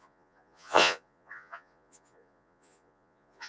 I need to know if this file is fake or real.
fake